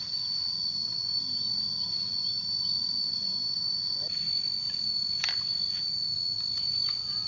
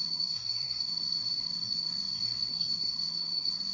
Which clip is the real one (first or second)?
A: first